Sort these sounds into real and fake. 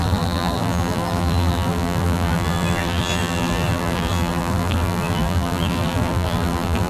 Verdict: fake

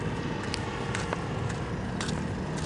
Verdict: real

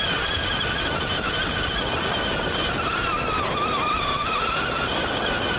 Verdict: real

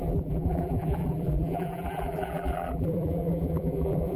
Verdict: fake